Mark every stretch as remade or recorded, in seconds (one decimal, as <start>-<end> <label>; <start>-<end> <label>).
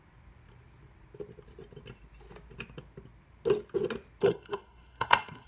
0.0-4.2 recorded; 4.2-5.5 remade